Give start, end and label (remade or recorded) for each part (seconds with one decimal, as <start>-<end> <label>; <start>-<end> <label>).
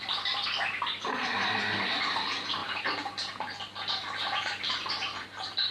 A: 0.0-2.6 remade; 2.6-5.7 recorded